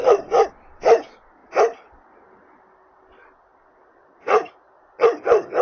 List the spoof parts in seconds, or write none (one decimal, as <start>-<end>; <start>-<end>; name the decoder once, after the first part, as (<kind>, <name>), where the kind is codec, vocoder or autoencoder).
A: 0.0-0.5 (vocoder, BigVGAN v2); 3.5-4.5